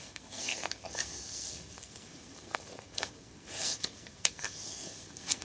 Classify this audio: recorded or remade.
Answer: remade